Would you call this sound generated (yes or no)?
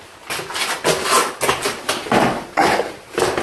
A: no